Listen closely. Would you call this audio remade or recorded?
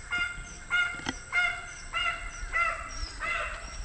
recorded